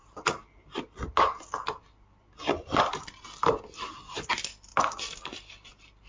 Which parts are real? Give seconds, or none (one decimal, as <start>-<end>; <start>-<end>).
0.0-6.1